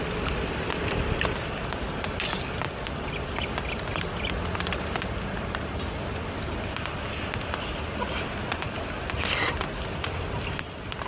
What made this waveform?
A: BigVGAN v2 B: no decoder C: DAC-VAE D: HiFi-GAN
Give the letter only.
B